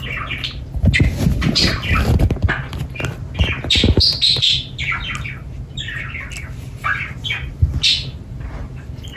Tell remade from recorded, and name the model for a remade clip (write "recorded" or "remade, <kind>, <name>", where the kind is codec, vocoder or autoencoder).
recorded